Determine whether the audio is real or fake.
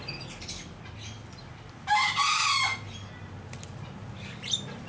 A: real